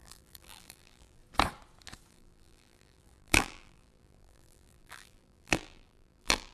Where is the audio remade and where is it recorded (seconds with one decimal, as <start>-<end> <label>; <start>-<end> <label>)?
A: 0.0-1.2 remade; 1.2-2.1 recorded; 2.1-6.5 remade

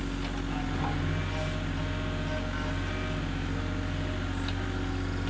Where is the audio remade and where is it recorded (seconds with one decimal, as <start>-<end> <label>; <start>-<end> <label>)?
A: 0.0-5.3 recorded

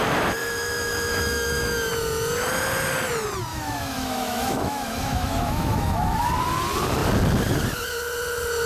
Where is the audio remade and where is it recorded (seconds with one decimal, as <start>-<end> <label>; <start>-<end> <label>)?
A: 0.0-0.4 recorded; 0.4-1.9 remade; 1.9-3.5 recorded; 3.5-6.3 remade; 6.3-8.7 recorded

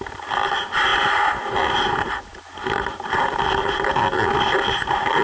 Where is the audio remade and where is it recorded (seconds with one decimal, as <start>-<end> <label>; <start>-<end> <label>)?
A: 0.0-5.2 recorded

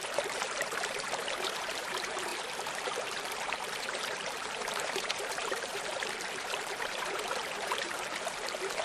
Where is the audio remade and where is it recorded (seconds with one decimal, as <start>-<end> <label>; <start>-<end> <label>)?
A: 0.0-8.8 remade

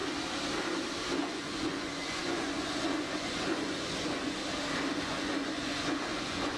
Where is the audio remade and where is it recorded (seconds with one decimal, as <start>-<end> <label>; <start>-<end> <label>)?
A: 0.0-1.2 recorded; 1.2-4.4 remade; 4.4-5.0 recorded; 5.0-6.6 remade